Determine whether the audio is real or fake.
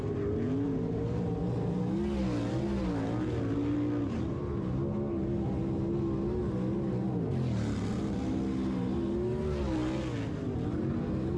real